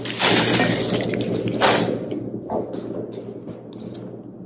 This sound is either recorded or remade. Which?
recorded